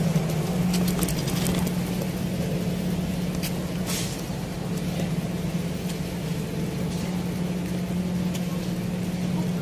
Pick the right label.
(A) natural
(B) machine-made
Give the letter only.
A